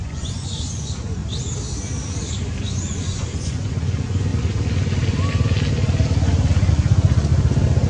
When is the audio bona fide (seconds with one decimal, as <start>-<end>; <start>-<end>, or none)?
1.2-2.6; 4.3-6.7; 7.3-7.9